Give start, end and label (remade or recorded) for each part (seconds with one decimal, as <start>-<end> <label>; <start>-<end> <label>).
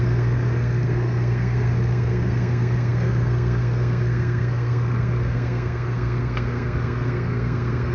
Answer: 0.0-7.9 remade